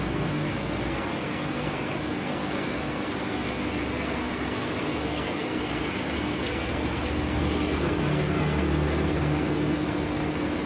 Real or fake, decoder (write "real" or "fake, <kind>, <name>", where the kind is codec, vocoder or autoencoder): fake, codec, SNAC